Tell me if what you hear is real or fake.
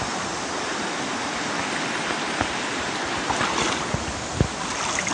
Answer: real